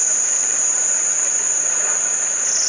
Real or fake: real